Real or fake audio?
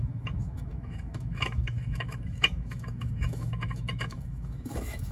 fake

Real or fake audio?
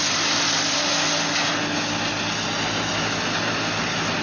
real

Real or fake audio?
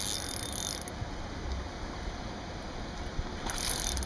real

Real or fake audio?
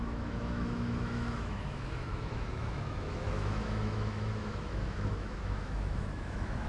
fake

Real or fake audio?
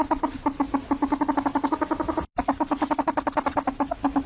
real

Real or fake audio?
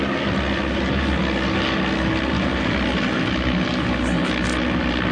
real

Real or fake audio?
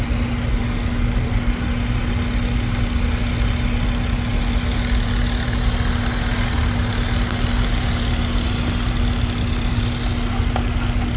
real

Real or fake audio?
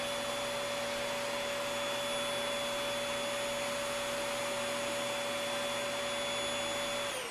real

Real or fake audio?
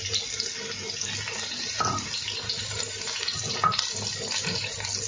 real